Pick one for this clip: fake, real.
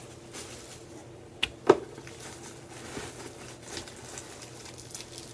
real